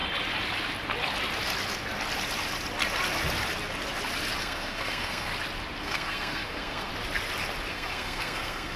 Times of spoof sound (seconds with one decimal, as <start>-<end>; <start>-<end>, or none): 4.4-5.3; 5.8-6.9; 7.7-8.8